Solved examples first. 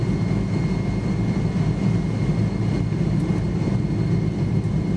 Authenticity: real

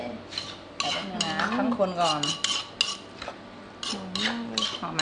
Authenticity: real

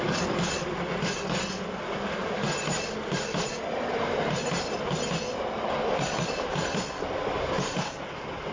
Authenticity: fake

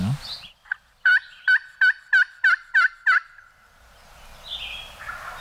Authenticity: real